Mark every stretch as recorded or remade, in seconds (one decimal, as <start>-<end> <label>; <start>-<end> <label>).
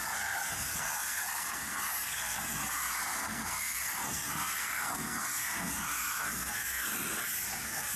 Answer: 0.0-6.9 remade; 6.9-7.6 recorded; 7.6-8.0 remade